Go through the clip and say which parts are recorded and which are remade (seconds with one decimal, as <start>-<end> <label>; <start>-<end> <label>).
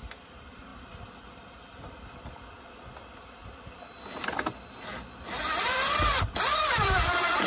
0.0-7.5 recorded